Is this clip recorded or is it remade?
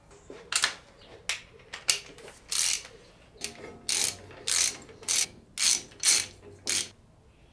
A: recorded